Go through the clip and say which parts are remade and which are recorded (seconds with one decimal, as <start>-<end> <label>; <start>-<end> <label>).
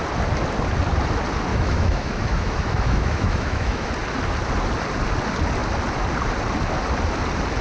0.0-1.5 recorded; 1.5-3.9 remade; 3.9-7.6 recorded